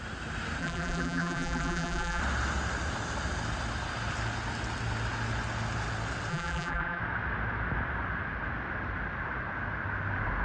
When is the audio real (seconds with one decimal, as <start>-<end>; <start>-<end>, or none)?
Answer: 0.0-0.6; 2.2-6.3; 7.0-10.4

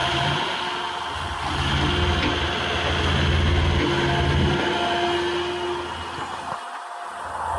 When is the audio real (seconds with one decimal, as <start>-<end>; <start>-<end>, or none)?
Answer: 0.6-7.6

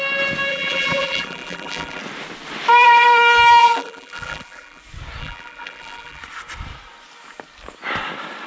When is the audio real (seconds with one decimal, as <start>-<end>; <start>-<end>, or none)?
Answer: 0.0-0.5; 2.0-3.6; 4.8-5.2; 6.2-8.5

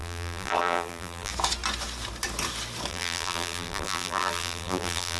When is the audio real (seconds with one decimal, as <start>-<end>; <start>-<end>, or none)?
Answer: 1.3-2.9

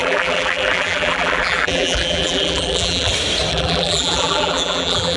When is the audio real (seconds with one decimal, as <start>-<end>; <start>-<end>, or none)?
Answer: 3.1-3.5

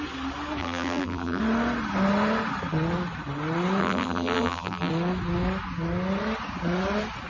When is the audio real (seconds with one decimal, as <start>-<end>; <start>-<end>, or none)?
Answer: 0.0-0.6; 1.4-3.8; 4.9-7.3

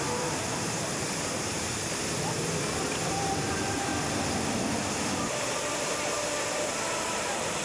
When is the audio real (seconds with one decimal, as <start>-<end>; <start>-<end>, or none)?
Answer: 1.8-3.1; 3.9-6.4